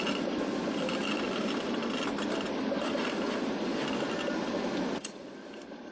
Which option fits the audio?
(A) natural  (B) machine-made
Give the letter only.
A